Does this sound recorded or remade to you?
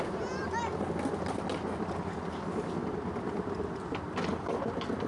recorded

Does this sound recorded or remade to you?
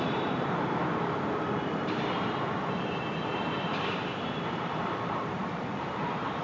remade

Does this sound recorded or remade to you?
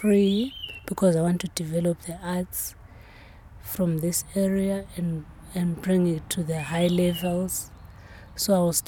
recorded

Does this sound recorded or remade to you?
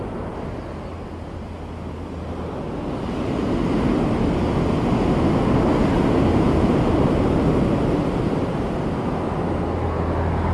recorded